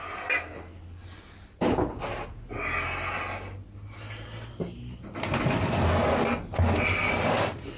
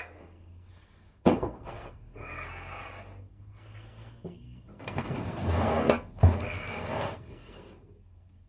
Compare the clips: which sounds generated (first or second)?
second